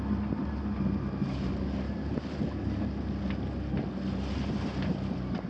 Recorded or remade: recorded